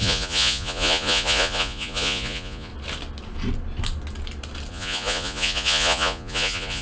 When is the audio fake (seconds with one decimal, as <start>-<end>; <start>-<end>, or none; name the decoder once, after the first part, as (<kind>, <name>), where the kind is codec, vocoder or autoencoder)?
0.0-2.7 (vocoder, Vocos); 4.7-6.8